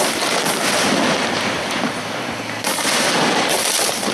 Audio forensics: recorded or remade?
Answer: recorded